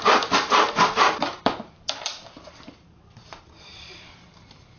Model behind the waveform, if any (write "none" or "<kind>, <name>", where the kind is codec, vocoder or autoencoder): vocoder, BigVGAN v2